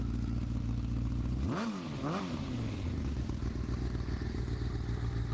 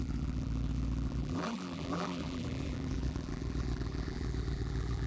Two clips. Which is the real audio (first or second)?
first